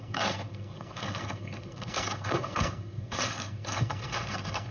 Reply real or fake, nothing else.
fake